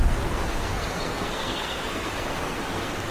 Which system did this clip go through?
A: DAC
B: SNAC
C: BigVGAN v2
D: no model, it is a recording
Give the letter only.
B